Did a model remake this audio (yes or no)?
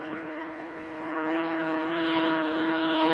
yes